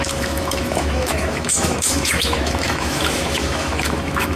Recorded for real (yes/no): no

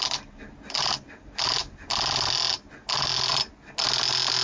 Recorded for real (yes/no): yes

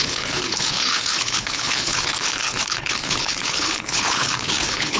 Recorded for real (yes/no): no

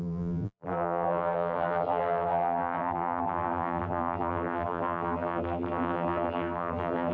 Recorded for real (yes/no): no